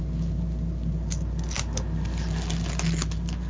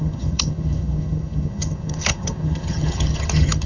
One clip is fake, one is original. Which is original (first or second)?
first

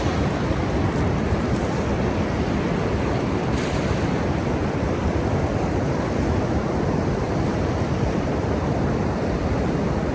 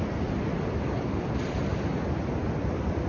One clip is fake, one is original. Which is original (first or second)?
second